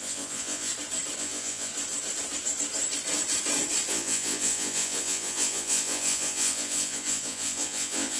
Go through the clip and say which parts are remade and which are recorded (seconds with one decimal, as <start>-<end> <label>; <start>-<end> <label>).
0.0-0.7 remade; 0.7-1.2 recorded; 1.2-1.7 remade; 1.7-3.9 recorded; 3.9-8.2 remade